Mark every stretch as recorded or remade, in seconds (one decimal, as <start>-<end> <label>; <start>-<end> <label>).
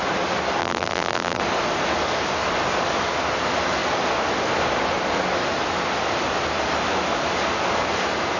0.0-0.6 recorded; 0.6-1.4 remade; 1.4-8.4 recorded